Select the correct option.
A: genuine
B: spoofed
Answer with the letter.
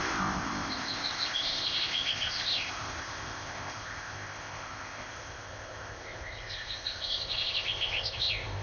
B